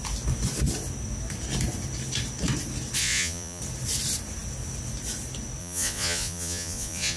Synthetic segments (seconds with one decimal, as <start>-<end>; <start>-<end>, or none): 3.0-3.6; 5.6-7.2